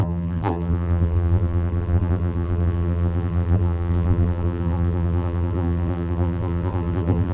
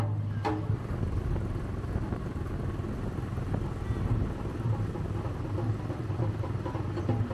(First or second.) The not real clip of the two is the first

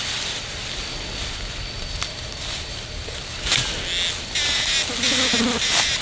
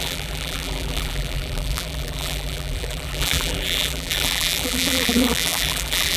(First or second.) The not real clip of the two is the second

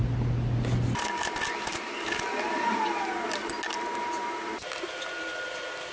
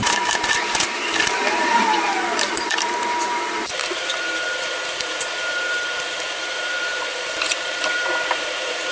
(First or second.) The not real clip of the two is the second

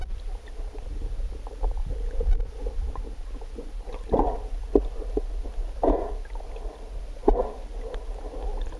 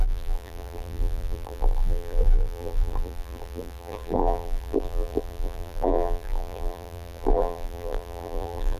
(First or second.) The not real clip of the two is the second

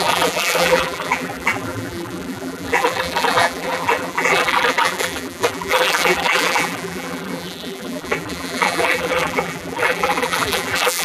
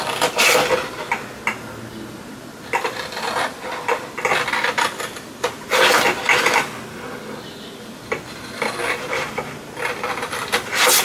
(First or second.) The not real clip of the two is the first